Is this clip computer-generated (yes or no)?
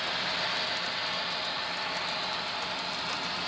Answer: no